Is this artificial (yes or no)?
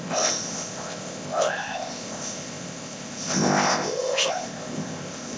yes